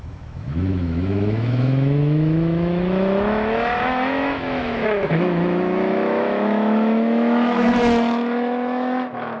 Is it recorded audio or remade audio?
remade